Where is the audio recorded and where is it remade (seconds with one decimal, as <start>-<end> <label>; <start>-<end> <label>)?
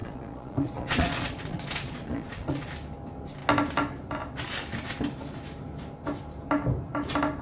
0.0-2.7 remade; 2.7-7.4 recorded